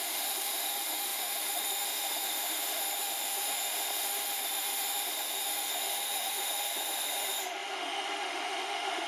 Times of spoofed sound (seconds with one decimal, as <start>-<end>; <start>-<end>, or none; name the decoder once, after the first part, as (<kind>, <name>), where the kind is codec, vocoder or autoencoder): 0.0-9.1 (autoencoder, DAC-VAE)